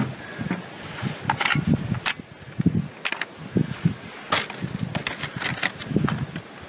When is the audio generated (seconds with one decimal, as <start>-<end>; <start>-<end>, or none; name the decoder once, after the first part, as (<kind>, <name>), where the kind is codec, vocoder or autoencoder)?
1.5-2.2 (vocoder, BigVGAN v2)